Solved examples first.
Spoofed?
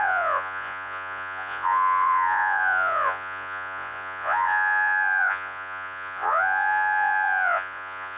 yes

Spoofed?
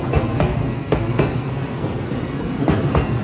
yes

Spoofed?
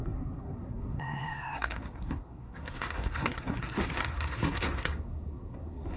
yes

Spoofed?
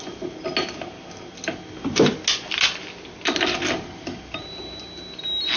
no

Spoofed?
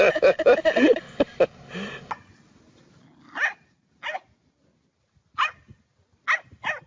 no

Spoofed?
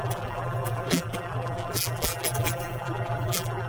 yes